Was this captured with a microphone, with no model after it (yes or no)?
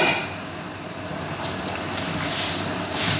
yes